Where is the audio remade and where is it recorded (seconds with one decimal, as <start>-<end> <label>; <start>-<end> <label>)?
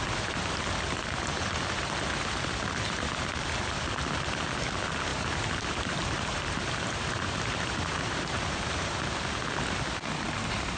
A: 0.0-5.1 recorded; 5.1-9.0 remade; 9.0-10.8 recorded